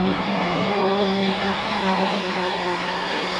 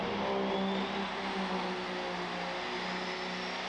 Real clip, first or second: second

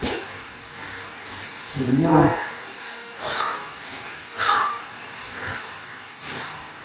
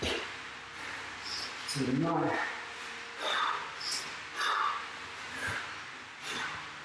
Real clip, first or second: second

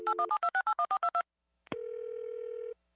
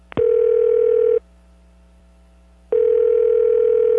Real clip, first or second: second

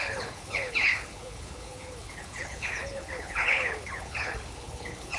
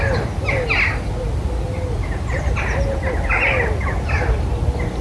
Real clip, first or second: second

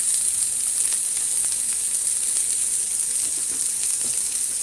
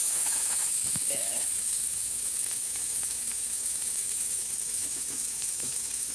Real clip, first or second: first